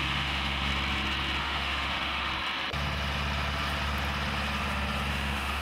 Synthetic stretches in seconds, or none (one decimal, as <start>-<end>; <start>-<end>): 0.0-0.7; 1.4-2.3; 5.1-5.6